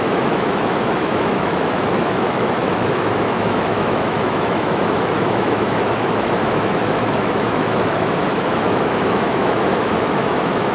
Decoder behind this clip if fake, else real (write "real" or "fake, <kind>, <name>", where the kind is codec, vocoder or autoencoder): fake, autoencoder, DAC-VAE